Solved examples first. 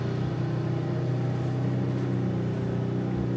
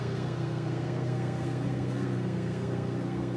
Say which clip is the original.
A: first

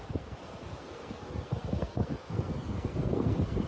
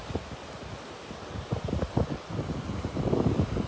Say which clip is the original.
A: second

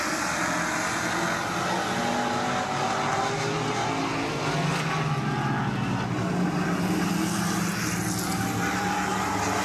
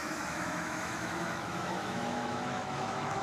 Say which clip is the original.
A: first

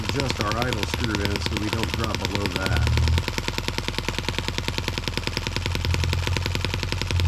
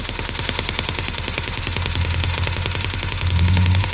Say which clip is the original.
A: first